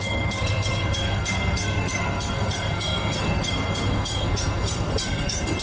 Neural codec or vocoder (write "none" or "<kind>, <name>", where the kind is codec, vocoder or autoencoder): codec, SNAC